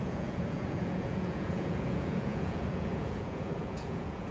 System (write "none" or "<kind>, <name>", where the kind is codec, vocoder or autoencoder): vocoder, Vocos